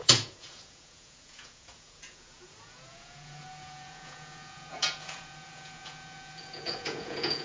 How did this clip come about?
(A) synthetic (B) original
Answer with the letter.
A